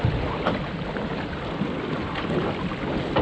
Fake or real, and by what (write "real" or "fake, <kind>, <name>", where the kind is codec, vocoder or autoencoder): real